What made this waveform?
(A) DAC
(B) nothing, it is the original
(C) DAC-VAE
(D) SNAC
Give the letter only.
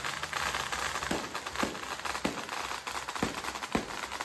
B